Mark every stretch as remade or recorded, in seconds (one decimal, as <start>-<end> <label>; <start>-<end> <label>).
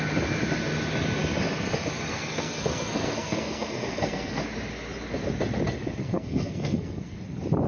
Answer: 0.0-2.1 recorded; 2.1-4.4 remade; 4.4-6.0 recorded; 6.0-7.2 remade; 7.2-7.7 recorded